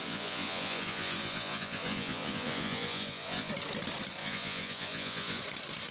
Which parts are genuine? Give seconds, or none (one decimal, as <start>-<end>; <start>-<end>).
3.5-4.2; 5.4-5.9